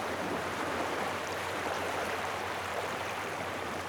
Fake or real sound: fake